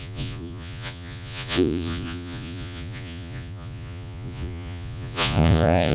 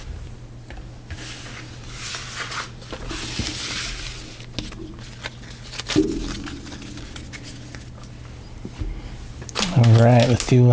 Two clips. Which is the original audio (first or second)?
second